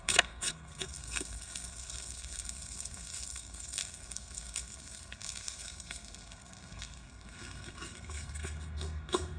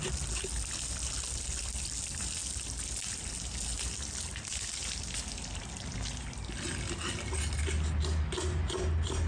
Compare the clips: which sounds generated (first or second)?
first